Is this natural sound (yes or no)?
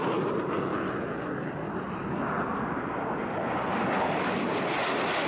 yes